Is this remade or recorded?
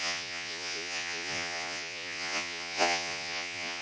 remade